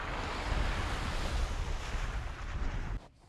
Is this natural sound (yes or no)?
yes